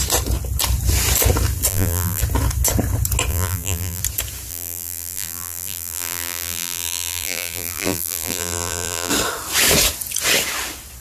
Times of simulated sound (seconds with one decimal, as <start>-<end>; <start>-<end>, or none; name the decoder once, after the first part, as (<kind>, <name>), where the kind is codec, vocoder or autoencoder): 1.7-2.2 (vocoder, BigVGAN v2); 3.3-4.0; 4.5-9.1